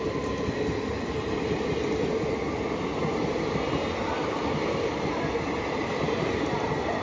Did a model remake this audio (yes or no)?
no